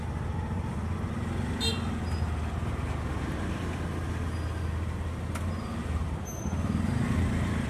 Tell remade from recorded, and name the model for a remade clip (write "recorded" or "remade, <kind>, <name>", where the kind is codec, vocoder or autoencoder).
recorded